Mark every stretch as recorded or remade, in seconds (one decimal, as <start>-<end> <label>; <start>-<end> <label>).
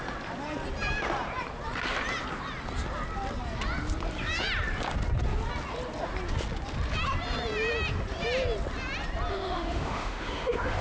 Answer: 0.0-9.3 recorded; 9.3-10.8 remade